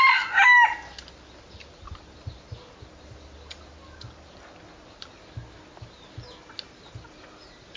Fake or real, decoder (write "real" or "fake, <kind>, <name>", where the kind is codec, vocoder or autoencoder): real